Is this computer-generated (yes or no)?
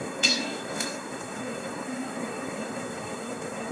yes